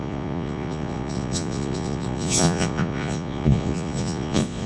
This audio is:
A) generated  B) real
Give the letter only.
A